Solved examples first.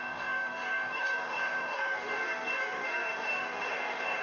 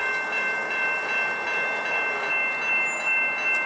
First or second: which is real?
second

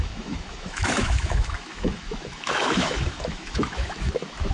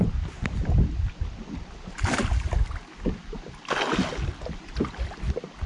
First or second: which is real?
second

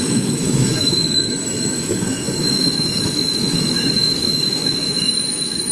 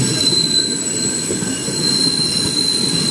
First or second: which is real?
second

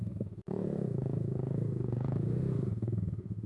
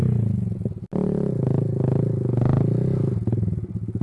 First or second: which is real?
second